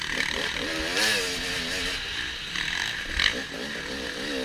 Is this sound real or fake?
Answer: real